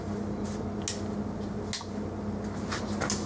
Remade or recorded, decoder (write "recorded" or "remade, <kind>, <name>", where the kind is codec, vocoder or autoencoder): recorded